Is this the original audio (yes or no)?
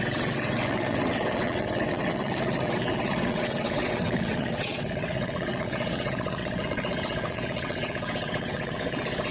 no